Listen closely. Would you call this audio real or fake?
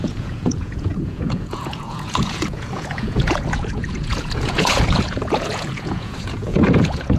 fake